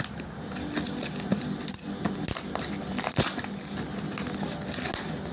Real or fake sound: real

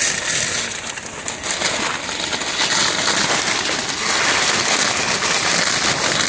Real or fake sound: real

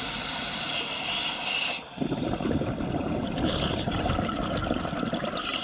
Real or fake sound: real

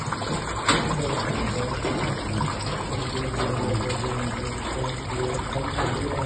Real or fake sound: real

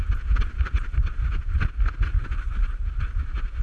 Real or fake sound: real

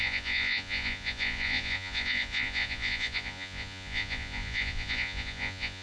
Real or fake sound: fake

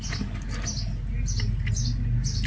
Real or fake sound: real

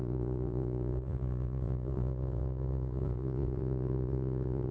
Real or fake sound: fake